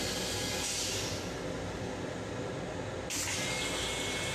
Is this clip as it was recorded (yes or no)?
yes